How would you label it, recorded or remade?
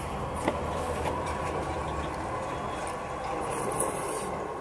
recorded